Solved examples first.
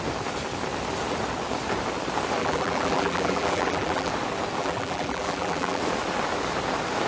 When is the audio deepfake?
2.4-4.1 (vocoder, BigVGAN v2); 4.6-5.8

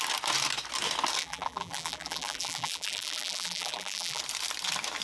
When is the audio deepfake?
1.2-4.2 (vocoder, BigVGAN v2)